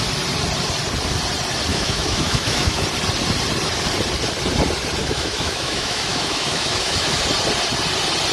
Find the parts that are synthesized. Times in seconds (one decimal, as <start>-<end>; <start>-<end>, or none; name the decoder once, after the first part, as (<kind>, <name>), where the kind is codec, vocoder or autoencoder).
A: 1.7-2.8 (autoencoder, DAC-VAE); 5.0-7.2